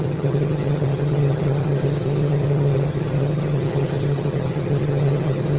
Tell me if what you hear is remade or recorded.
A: remade